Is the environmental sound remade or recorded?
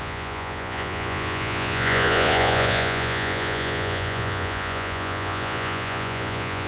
remade